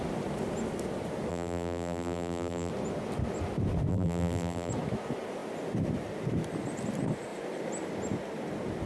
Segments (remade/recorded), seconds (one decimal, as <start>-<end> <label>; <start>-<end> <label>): 0.0-1.3 recorded; 1.3-2.7 remade; 2.7-3.9 recorded; 3.9-4.7 remade; 4.7-8.9 recorded